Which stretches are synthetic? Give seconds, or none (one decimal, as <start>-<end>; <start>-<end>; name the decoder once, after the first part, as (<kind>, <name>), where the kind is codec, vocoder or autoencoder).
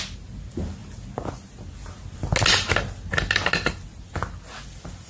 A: none